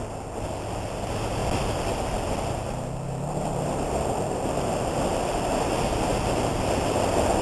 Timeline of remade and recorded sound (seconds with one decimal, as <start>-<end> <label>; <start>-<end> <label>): 0.0-7.4 recorded